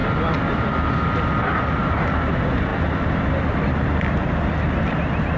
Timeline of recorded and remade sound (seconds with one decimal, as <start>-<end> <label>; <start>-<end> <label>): 0.0-5.4 recorded

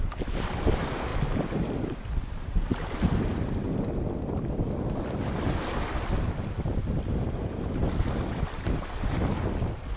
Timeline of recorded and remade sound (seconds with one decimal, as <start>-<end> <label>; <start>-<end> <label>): 0.0-10.0 recorded

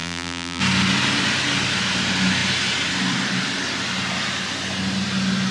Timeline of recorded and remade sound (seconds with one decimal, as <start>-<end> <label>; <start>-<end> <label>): 0.0-0.6 remade; 0.6-5.5 recorded

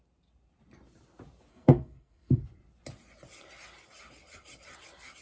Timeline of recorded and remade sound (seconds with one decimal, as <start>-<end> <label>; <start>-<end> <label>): 0.0-1.5 recorded; 1.5-2.4 remade; 2.4-5.2 recorded

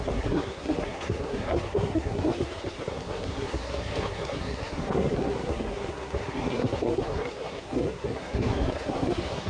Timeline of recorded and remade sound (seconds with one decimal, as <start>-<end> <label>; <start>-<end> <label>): 0.0-9.5 remade

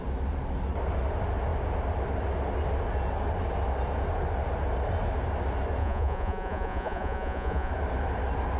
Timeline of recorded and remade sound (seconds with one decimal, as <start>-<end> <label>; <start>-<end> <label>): 0.0-5.8 recorded; 5.8-7.7 remade; 7.7-8.6 recorded